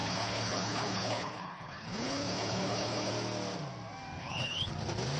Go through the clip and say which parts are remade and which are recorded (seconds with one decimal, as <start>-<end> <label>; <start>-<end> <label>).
0.0-3.1 remade; 3.1-4.2 recorded; 4.2-4.7 remade; 4.7-5.2 recorded

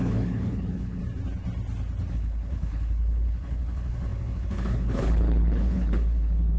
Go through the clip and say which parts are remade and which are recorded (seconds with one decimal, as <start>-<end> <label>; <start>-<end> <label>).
0.0-1.0 remade; 1.0-2.1 recorded; 2.1-6.6 remade